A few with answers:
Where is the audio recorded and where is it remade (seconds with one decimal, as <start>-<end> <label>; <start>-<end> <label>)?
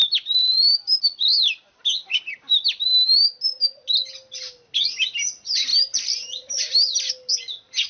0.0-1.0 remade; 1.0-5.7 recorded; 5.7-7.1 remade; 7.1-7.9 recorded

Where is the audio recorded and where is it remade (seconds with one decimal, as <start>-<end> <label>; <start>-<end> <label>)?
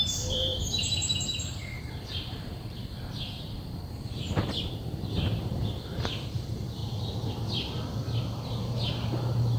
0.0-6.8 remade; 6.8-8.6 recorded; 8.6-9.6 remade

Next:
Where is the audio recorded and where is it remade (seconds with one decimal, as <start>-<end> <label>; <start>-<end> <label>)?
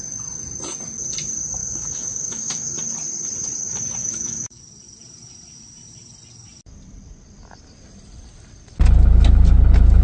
0.0-1.6 recorded; 1.6-2.7 remade; 2.7-4.0 recorded; 4.0-4.6 remade; 4.6-10.0 recorded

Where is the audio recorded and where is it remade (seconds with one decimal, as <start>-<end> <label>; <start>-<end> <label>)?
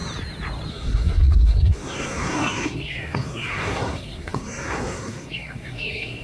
0.0-0.7 recorded; 0.7-6.2 remade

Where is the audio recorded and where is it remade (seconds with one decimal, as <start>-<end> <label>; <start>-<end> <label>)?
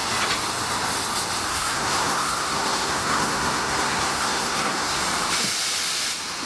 0.0-1.5 recorded; 1.5-5.0 remade; 5.0-6.5 recorded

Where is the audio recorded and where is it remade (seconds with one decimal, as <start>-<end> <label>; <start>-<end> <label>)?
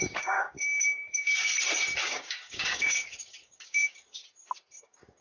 0.0-1.5 remade; 1.5-2.0 recorded; 2.0-4.2 remade; 4.2-4.8 recorded; 4.8-5.2 remade